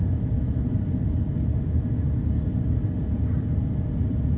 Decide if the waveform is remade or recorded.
recorded